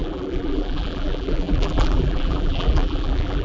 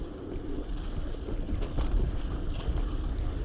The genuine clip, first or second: second